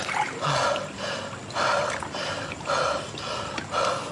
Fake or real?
real